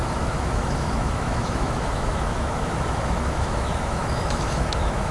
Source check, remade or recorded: remade